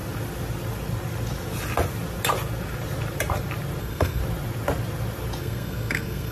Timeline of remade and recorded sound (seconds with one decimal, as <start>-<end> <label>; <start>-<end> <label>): 0.0-3.8 recorded; 3.8-4.2 remade; 4.2-5.4 recorded; 5.4-6.3 remade